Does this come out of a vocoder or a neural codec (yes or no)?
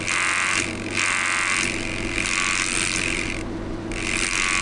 no